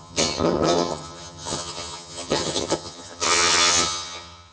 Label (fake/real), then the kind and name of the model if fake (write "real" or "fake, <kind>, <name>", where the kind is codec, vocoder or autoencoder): fake, vocoder, HiFi-GAN